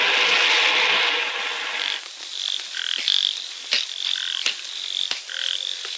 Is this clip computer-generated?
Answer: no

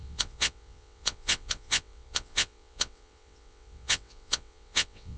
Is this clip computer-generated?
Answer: yes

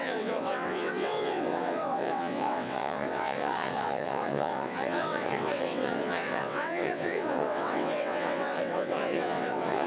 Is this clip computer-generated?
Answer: yes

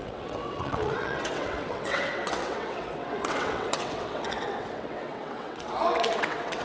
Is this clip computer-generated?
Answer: yes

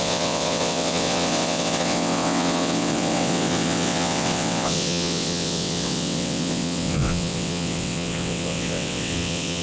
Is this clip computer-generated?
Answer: yes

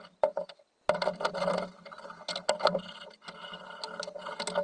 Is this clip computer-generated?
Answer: no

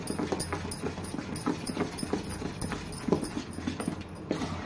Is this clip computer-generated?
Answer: no